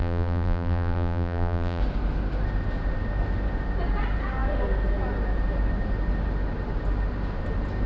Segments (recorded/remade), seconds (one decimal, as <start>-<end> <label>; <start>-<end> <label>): 0.0-1.8 remade; 1.8-7.9 recorded